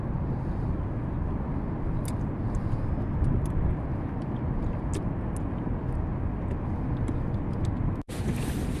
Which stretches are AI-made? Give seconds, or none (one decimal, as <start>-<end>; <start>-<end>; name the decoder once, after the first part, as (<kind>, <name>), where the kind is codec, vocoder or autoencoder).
none